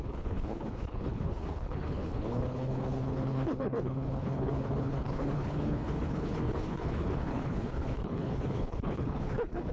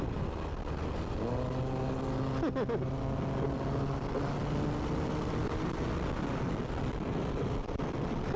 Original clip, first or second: second